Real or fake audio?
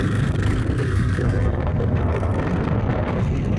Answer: fake